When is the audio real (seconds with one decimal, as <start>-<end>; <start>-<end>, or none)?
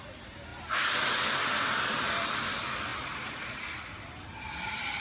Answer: 0.0-5.0